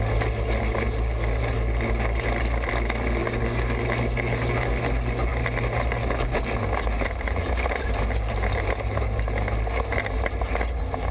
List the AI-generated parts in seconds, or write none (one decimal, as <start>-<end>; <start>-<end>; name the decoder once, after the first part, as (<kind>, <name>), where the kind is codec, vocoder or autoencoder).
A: 3.2-3.8 (codec, DAC)